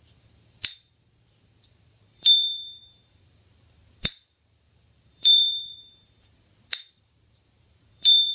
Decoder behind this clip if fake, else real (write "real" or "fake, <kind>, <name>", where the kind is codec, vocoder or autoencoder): fake, vocoder, BigVGAN v2